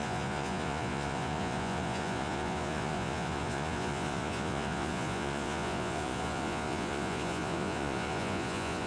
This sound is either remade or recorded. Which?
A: remade